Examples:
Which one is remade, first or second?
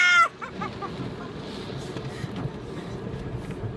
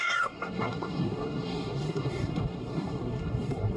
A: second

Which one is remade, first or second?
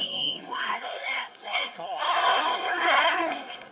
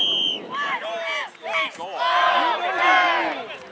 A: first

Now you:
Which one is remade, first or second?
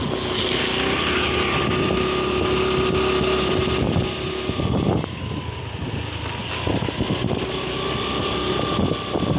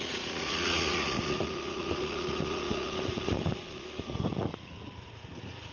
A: second